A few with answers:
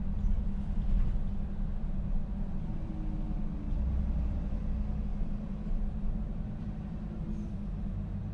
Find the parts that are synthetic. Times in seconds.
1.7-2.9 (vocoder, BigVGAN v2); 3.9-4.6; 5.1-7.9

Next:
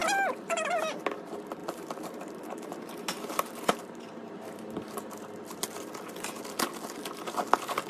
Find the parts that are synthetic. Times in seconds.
0.0-1.0 (vocoder, BigVGAN v2); 1.6-5.8

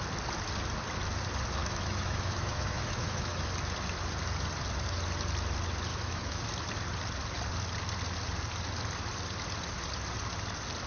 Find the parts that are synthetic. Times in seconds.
1.6-3.5 (autoencoder, DAC-VAE); 5.9-6.4

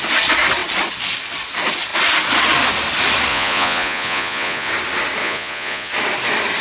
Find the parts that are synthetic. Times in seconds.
3.3-4.7 (vocoder, Vocos); 5.2-5.9

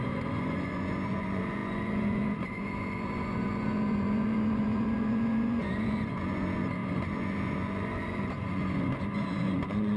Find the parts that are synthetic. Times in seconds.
0.0-10.0 (vocoder, Vocos)

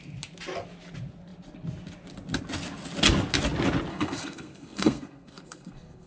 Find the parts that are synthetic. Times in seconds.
3.9-6.1 (codec, SNAC)